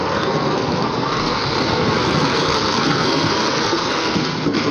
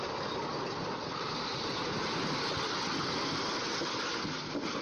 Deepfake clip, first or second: first